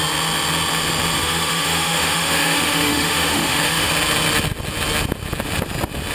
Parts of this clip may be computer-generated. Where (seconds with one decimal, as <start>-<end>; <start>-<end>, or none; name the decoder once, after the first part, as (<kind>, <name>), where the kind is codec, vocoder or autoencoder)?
1.2-3.9 (autoencoder, DAC-VAE)